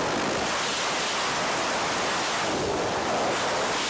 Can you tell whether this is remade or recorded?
recorded